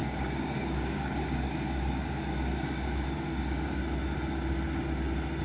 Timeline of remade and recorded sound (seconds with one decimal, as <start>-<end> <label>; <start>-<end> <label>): 0.0-3.8 remade; 3.8-5.4 recorded